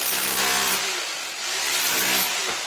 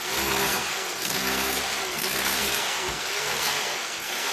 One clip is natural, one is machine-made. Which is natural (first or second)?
first